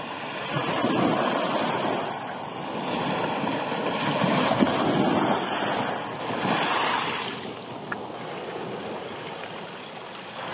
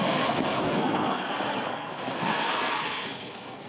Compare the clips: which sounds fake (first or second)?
second